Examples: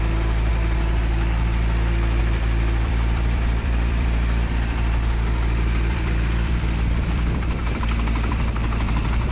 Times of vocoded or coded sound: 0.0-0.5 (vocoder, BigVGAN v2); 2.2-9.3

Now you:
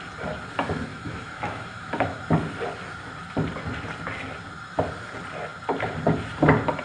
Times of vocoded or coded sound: 0.9-2.3 (autoencoder, DAC-VAE)

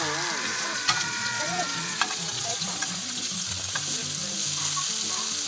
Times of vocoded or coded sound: 0.5-3.8 (vocoder, Vocos)

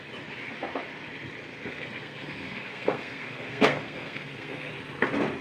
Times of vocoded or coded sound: 1.5-4.7 (codec, SNAC)

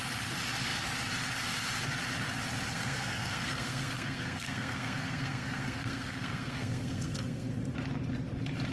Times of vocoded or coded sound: 2.7-7.5 (codec, SNAC)

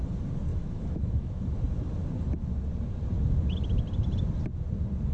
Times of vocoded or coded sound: 0.5-1.4 (autoencoder, DAC-VAE)

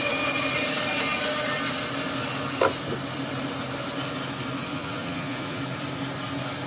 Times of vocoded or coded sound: 4.7-5.6 (vocoder, Vocos)